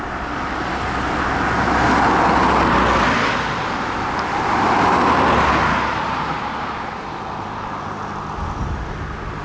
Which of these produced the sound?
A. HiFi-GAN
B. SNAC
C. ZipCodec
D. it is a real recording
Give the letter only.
D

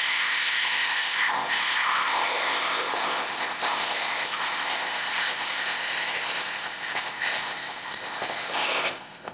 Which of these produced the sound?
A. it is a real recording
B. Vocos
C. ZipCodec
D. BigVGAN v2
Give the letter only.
C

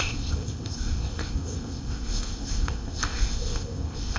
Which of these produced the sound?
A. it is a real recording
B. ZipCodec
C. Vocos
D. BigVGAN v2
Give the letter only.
B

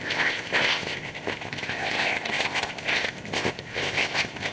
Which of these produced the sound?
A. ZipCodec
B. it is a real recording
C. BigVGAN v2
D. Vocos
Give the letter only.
A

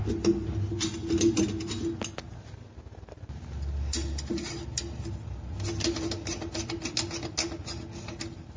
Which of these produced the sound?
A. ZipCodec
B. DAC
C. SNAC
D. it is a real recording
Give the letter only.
D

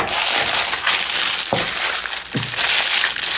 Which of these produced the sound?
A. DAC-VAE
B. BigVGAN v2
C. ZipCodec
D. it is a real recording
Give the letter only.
D